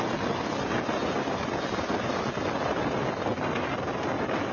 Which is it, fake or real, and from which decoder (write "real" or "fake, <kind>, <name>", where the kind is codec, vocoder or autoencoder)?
real